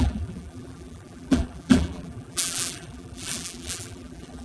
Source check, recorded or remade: remade